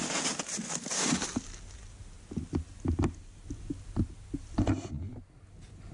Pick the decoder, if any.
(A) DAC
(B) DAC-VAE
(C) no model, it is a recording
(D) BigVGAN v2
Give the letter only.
C